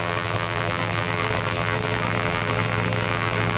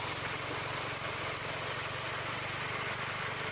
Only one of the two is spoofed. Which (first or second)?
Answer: first